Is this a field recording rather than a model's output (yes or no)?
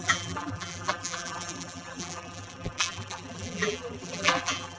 no